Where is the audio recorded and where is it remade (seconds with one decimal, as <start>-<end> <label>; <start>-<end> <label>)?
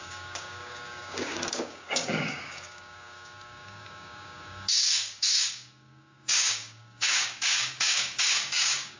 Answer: 0.0-9.0 remade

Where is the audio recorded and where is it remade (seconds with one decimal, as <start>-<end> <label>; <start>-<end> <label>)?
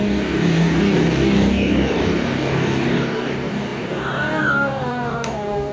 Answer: 0.0-5.7 remade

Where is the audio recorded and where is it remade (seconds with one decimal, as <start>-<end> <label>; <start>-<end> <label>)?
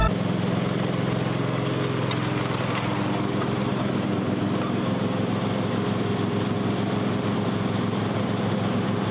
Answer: 0.0-9.1 recorded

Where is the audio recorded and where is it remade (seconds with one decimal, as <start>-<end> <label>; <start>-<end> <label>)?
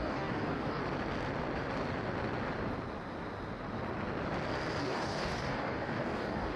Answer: 0.0-0.8 remade; 0.8-4.8 recorded; 4.8-6.6 remade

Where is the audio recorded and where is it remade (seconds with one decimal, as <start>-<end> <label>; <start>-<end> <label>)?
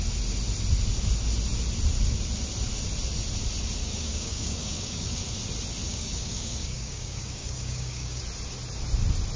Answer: 0.0-3.8 recorded; 3.8-5.2 remade; 5.2-5.9 recorded; 5.9-8.2 remade; 8.2-9.4 recorded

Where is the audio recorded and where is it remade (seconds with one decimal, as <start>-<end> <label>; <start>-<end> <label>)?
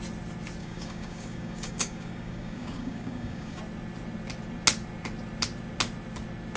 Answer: 0.0-0.6 recorded; 0.6-3.6 remade; 3.6-6.6 recorded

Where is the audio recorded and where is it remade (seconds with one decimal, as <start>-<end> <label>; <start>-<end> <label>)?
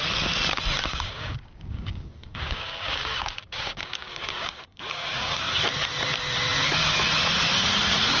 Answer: 0.0-0.9 recorded; 0.9-5.5 remade; 5.5-8.2 recorded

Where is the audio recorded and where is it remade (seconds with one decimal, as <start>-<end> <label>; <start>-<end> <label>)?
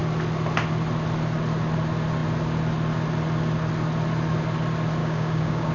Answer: 0.0-5.0 recorded; 5.0-5.7 remade